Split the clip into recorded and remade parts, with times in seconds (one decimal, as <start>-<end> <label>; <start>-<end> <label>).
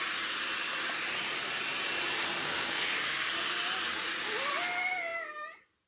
0.0-2.4 recorded; 2.4-3.4 remade; 3.4-5.9 recorded